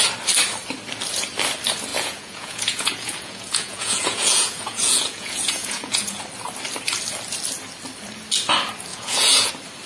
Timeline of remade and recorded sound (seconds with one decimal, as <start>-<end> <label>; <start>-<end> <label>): 0.0-1.9 recorded; 1.9-6.2 remade; 6.2-8.9 recorded; 8.9-9.5 remade; 9.5-9.9 recorded